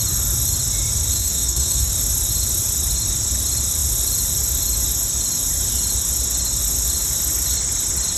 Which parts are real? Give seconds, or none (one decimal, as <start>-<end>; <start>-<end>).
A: 0.0-1.1; 1.9-8.2